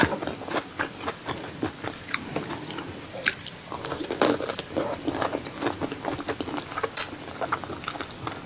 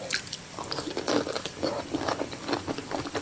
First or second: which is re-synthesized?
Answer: second